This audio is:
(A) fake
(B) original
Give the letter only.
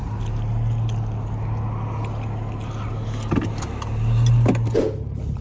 B